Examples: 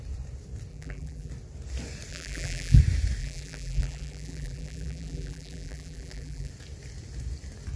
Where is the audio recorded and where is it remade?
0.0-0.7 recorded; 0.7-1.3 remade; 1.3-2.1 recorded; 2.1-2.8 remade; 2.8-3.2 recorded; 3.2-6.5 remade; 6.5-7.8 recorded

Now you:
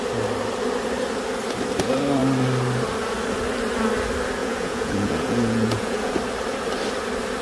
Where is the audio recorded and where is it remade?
0.0-4.4 recorded; 4.4-6.1 remade; 6.1-7.4 recorded

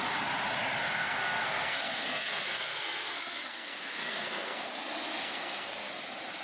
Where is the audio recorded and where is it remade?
0.0-0.9 recorded; 0.9-4.7 remade; 4.7-5.2 recorded; 5.2-5.9 remade; 5.9-6.4 recorded

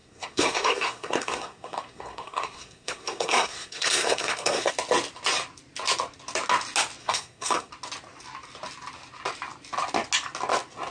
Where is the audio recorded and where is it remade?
0.0-4.7 remade; 4.7-7.0 recorded; 7.0-7.7 remade; 7.7-10.9 recorded

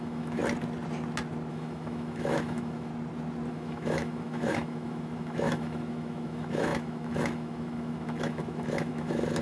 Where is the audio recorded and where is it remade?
0.0-0.4 remade; 0.4-1.5 recorded; 1.5-2.9 remade; 2.9-3.5 recorded; 3.5-9.4 remade